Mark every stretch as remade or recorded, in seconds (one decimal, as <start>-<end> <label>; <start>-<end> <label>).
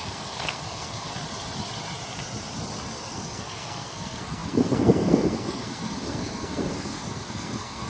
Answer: 0.0-1.1 remade; 1.1-3.1 recorded; 3.1-7.9 remade